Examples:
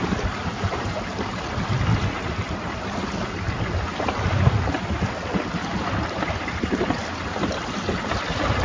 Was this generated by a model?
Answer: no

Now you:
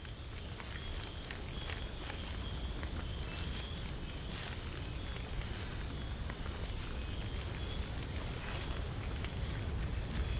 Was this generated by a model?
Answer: no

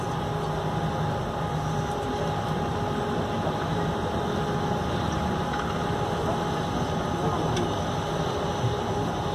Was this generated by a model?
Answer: no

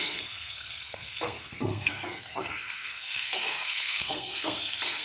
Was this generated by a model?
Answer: yes